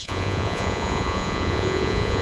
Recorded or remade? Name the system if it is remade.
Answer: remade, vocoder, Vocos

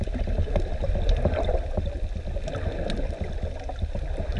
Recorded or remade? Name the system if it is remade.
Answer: recorded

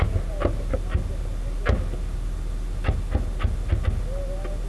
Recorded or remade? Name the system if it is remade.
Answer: recorded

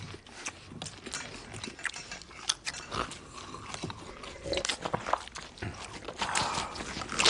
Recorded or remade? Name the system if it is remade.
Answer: recorded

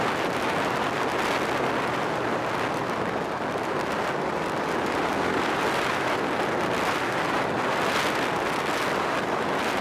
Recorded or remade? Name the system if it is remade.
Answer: recorded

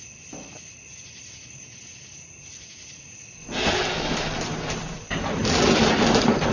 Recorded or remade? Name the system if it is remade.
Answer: recorded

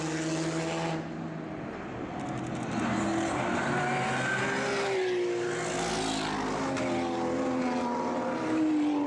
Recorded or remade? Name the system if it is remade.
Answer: recorded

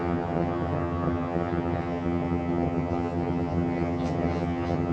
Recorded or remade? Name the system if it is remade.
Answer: remade, vocoder, HiFi-GAN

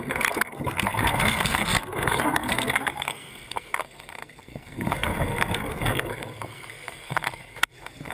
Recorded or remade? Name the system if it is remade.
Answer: remade, codec, SNAC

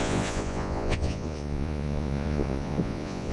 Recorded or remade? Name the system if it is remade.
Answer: remade, vocoder, Vocos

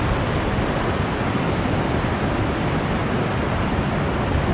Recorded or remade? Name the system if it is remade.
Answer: recorded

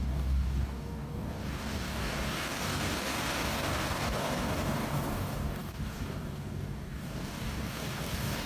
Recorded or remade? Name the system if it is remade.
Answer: remade, codec, DAC